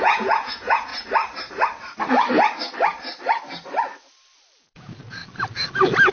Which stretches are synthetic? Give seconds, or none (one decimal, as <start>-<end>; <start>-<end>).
0.0-0.9; 4.6-5.2